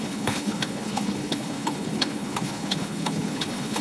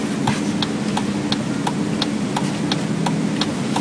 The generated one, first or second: first